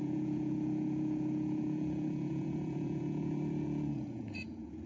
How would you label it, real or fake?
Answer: fake